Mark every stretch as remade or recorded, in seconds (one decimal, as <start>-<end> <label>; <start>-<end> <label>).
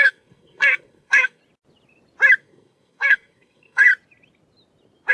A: 0.0-1.4 remade; 1.4-2.4 recorded; 2.4-3.9 remade; 3.9-5.1 recorded